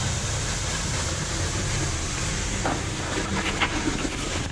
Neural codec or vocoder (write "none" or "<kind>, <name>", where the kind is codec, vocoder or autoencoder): none